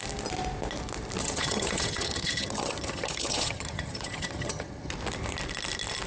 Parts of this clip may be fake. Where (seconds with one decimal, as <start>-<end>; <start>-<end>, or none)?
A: 1.2-4.9